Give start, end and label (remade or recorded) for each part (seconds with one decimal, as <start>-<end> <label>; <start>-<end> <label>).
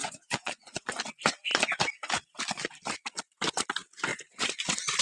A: 0.0-1.0 remade; 1.0-4.1 recorded; 4.1-4.6 remade; 4.6-5.0 recorded